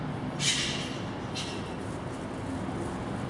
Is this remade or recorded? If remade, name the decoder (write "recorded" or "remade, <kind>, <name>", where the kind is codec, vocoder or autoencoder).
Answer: recorded